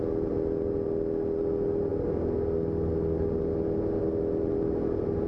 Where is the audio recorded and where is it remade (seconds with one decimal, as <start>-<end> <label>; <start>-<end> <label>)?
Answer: 0.0-5.3 recorded